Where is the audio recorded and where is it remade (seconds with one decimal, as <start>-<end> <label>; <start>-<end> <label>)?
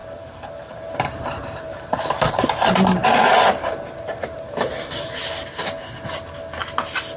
0.0-2.0 remade; 2.0-3.0 recorded; 3.0-5.2 remade; 5.2-7.2 recorded